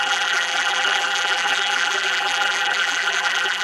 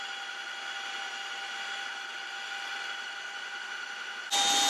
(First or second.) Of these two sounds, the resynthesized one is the first